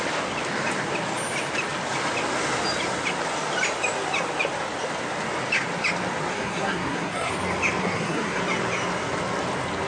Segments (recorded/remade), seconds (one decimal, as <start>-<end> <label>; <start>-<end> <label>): 0.0-6.3 recorded; 6.3-7.3 remade; 7.3-7.8 recorded; 7.8-8.4 remade; 8.4-9.9 recorded